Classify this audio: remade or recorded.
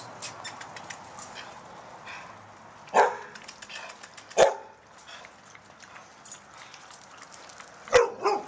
recorded